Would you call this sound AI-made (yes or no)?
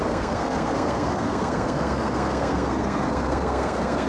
yes